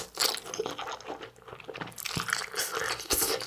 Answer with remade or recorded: recorded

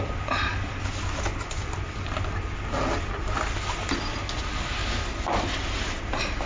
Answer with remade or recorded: recorded